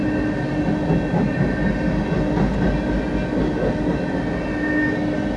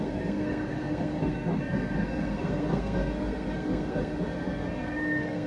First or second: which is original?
first